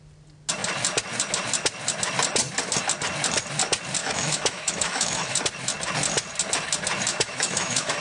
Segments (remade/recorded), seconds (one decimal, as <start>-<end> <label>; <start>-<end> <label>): 0.0-4.0 recorded; 4.0-5.4 remade; 5.4-7.1 recorded; 7.1-8.0 remade